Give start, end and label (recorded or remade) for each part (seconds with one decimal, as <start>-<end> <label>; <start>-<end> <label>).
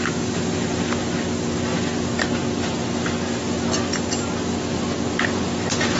0.0-6.0 recorded